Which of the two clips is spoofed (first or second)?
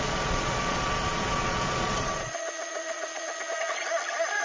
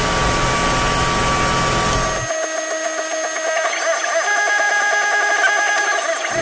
first